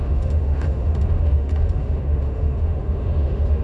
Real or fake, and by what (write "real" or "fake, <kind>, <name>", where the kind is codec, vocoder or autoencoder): fake, autoencoder, DAC-VAE